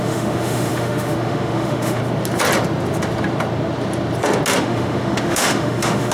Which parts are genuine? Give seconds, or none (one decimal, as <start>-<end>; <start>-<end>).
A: 2.0-4.6